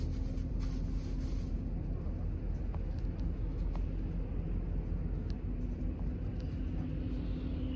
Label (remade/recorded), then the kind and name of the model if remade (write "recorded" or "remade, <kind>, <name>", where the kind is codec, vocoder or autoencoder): recorded